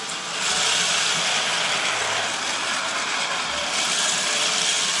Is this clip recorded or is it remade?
recorded